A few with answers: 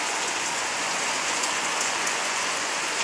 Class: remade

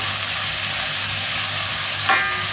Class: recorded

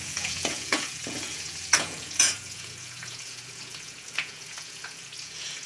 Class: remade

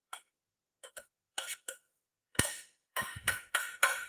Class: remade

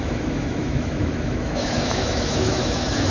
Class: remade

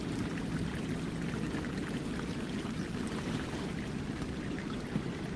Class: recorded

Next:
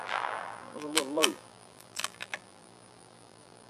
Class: remade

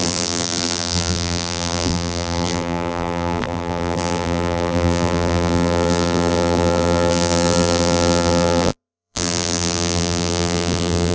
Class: remade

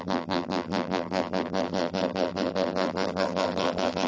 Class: remade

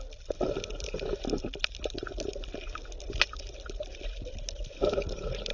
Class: recorded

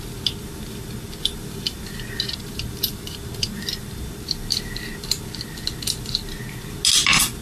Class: recorded